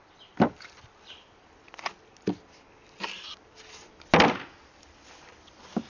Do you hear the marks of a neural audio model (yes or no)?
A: no